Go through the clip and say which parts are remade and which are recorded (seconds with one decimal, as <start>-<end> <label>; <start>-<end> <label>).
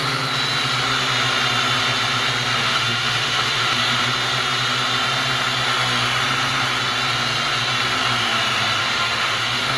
0.0-2.6 recorded; 2.6-4.0 remade; 4.0-8.8 recorded; 8.8-9.8 remade